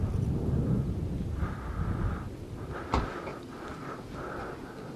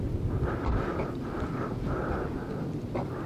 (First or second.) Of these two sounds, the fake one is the second